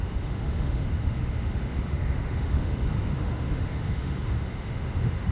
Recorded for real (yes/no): no